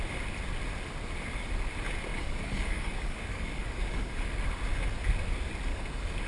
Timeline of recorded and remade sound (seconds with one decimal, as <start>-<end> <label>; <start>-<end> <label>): 0.0-2.1 recorded; 2.1-4.2 remade; 4.2-5.7 recorded; 5.7-6.3 remade